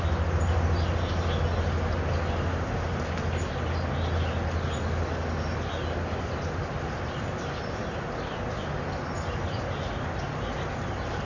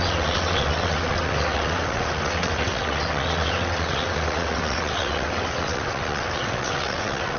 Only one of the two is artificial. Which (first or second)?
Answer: second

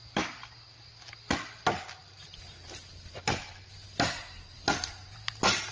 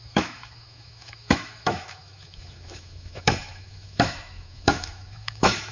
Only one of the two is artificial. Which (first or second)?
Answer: second